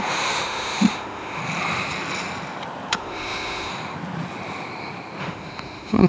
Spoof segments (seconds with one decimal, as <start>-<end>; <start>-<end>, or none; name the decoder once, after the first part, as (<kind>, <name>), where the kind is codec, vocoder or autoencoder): 0.0-1.4 (autoencoder, DAC-VAE); 2.9-3.7; 5.2-6.1